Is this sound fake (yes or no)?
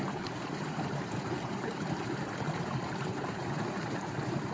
yes